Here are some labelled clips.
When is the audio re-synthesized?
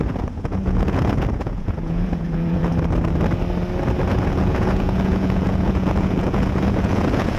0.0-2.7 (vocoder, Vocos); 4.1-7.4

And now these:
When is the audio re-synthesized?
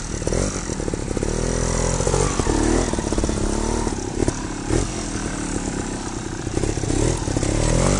none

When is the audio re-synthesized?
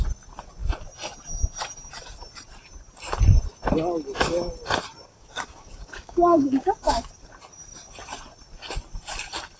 5.1-7.1 (codec, DAC)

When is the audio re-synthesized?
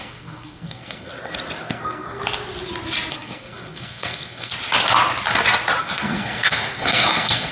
0.0-1.1 (codec, SNAC); 1.6-2.2; 3.1-4.5; 5.8-7.5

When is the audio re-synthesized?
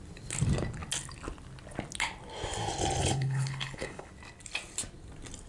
3.0-4.1 (codec, HILCodec)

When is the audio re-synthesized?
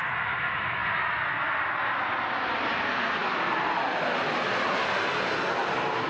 none